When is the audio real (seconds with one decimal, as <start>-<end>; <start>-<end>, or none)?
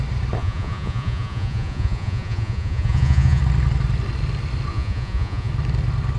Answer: 0.0-0.4; 3.4-4.7; 5.5-6.2